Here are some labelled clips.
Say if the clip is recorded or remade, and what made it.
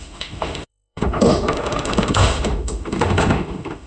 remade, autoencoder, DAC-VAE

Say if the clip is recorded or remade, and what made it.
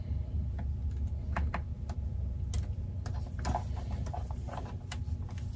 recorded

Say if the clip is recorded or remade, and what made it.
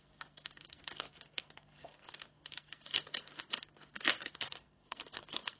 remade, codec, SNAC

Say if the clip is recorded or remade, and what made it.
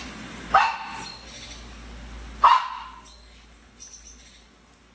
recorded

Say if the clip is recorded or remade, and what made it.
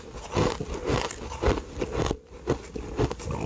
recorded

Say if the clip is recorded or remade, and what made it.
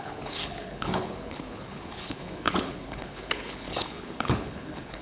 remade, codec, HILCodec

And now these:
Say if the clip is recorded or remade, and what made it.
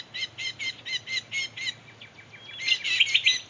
recorded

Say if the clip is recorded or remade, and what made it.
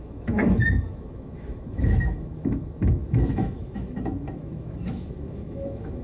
remade, autoencoder, DAC-VAE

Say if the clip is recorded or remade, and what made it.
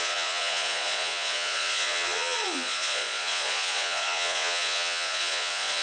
remade, vocoder, Vocos